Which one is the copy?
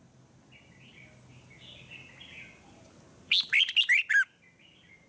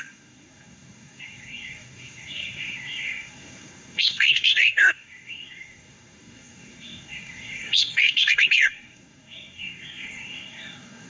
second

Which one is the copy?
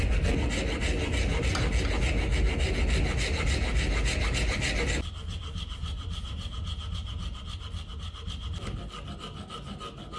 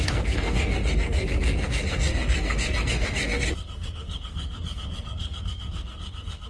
second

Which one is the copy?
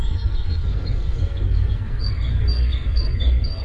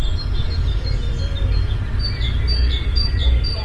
first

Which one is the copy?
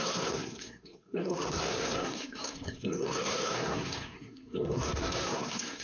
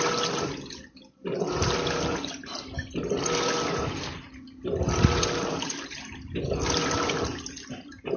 first